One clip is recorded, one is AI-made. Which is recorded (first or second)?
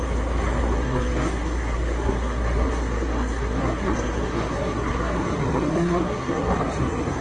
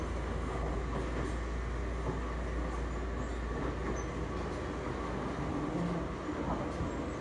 second